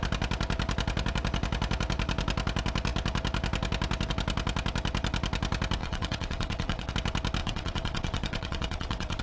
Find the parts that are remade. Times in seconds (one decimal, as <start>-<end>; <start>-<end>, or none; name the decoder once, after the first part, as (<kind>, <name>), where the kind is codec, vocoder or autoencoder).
5.8-6.9 (vocoder, WaveNeXt); 7.4-9.2